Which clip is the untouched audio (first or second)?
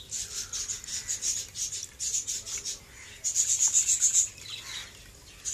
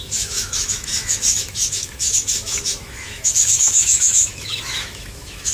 first